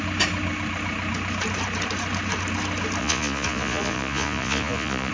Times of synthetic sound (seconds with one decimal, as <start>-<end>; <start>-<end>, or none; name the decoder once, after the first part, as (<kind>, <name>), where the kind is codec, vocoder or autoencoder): 3.0-5.1 (vocoder, Vocos)